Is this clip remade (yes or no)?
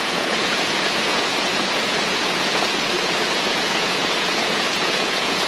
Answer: yes